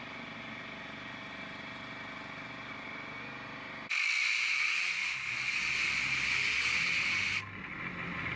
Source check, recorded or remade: recorded